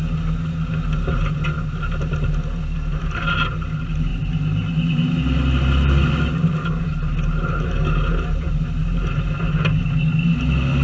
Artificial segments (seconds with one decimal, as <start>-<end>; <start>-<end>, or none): none

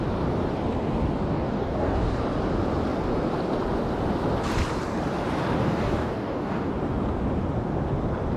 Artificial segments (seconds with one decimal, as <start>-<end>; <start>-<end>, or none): 1.3-2.2; 5.6-6.7